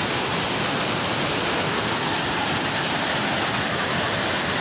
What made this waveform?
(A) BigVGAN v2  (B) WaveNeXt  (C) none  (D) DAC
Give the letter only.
C